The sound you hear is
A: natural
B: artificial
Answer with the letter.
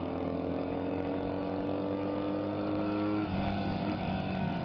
B